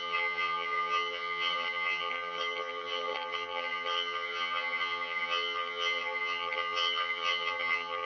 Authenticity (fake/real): fake